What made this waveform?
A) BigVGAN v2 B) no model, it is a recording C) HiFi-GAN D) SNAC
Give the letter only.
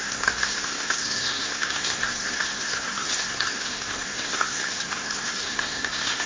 D